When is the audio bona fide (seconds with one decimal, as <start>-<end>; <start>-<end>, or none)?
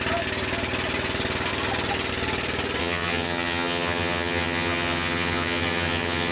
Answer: 0.0-2.8